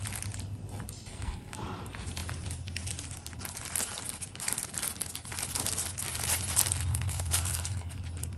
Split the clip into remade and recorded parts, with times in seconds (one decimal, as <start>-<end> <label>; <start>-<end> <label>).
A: 0.0-1.1 recorded; 1.1-1.6 remade; 1.6-6.9 recorded; 6.9-8.0 remade; 8.0-8.4 recorded